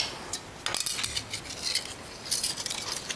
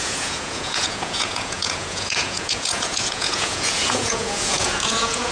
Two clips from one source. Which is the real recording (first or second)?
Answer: first